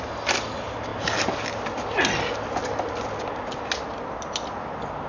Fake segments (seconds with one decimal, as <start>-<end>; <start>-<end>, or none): none